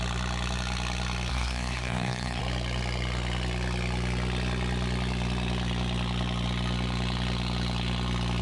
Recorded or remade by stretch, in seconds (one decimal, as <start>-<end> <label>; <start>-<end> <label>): 0.0-1.3 recorded; 1.3-2.4 remade; 2.4-8.4 recorded